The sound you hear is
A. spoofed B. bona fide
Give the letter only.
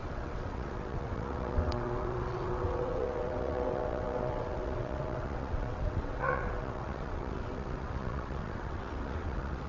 A